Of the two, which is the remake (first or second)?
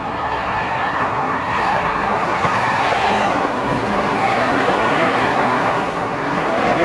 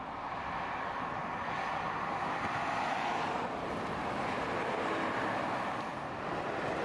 first